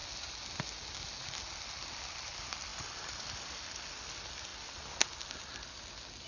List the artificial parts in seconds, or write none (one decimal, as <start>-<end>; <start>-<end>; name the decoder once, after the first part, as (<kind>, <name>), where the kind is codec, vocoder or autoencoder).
2.7-3.5 (vocoder, BigVGAN v2)